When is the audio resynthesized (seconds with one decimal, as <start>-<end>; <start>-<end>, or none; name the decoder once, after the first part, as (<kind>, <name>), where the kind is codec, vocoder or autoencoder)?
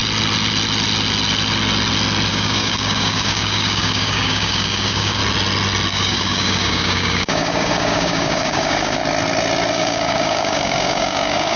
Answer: 2.3-5.2 (codec, DAC); 5.9-9.0; 9.7-11.6